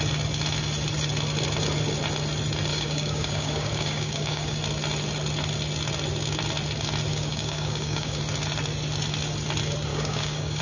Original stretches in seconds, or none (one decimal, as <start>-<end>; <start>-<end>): 0.0-2.7; 4.6-7.1; 8.2-9.9